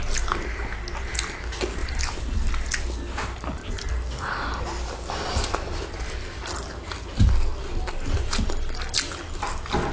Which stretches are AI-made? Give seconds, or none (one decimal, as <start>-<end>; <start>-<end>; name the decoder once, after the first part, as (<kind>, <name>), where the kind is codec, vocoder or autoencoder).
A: none